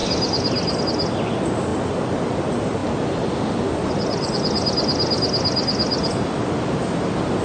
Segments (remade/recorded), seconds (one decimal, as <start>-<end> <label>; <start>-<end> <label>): 0.0-7.4 recorded